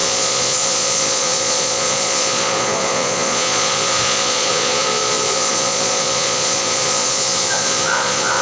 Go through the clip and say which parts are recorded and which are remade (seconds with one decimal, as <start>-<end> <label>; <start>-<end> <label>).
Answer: 0.0-8.4 remade